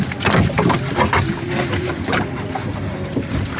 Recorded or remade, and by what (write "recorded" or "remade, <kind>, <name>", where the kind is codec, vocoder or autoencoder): recorded